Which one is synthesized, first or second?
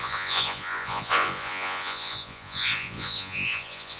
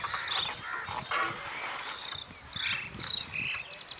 first